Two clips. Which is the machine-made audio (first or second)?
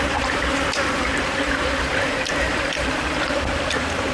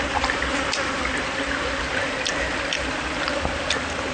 first